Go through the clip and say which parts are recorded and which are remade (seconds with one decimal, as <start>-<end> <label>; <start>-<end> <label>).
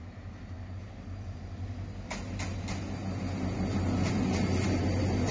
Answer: 0.0-5.3 recorded